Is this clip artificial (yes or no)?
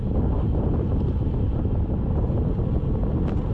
no